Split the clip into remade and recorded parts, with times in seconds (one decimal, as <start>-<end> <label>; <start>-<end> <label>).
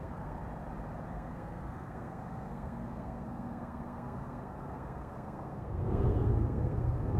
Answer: 0.0-0.4 remade; 0.4-1.1 recorded; 1.1-7.2 remade